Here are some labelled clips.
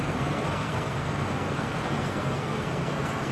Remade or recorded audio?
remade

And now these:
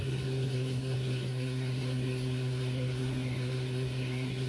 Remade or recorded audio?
remade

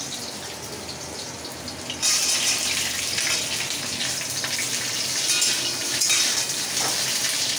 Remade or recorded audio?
recorded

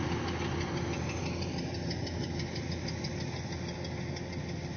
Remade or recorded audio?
recorded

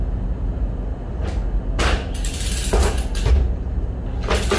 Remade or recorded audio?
recorded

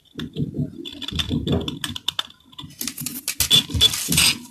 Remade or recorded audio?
recorded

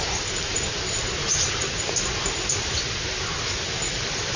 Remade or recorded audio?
recorded